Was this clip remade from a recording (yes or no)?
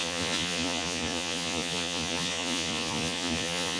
yes